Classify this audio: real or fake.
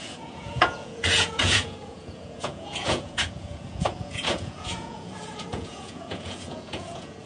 fake